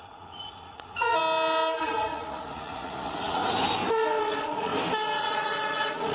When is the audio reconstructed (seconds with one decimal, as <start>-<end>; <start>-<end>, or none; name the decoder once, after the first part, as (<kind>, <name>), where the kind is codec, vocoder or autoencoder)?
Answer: 0.0-1.2 (vocoder, Vocos); 1.8-3.4; 4.2-4.7; 5.2-6.1